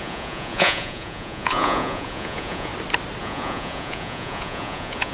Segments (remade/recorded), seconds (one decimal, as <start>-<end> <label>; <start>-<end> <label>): 0.0-2.7 remade; 2.7-3.2 recorded; 3.2-5.1 remade